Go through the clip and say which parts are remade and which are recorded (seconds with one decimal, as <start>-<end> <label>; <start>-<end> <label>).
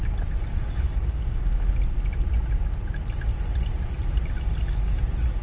0.0-0.5 recorded; 0.5-1.7 remade; 1.7-5.4 recorded